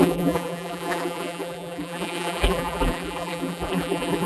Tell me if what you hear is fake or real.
fake